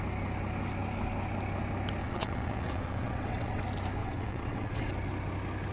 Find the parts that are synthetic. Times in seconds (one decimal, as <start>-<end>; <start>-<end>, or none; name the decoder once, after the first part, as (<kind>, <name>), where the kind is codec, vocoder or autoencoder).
2.0-3.6 (vocoder, WaveNeXt); 4.0-4.9